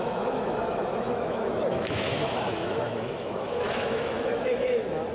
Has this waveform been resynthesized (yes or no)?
yes